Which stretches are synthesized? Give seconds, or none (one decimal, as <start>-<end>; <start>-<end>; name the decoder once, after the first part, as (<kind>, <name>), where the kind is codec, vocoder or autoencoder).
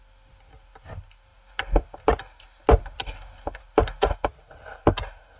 none